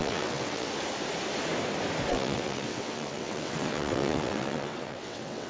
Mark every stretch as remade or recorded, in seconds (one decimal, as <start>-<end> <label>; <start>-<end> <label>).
0.0-0.7 remade; 0.7-2.1 recorded; 2.1-5.5 remade